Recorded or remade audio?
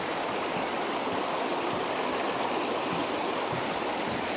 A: recorded